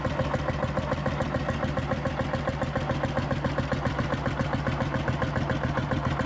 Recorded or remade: recorded